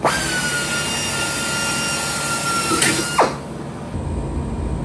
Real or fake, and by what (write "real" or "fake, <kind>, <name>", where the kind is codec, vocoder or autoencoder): real